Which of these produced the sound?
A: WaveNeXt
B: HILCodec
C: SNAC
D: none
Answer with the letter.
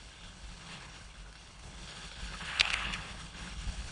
B